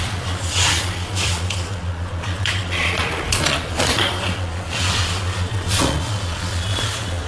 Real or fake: fake